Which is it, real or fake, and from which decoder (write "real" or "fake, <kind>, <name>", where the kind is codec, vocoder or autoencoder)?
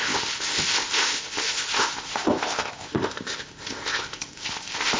fake, codec, ZipCodec